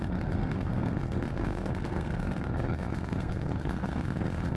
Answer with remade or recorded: remade